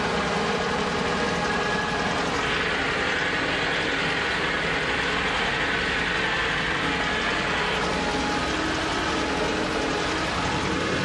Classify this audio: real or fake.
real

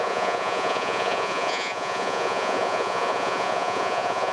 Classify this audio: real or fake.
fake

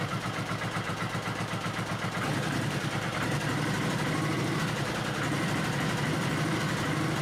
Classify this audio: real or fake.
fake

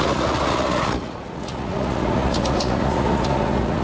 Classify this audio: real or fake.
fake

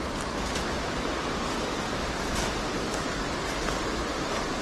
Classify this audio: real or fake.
real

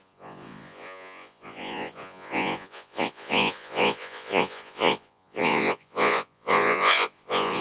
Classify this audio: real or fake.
fake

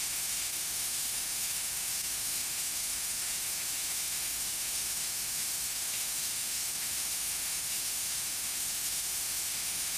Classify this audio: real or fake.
fake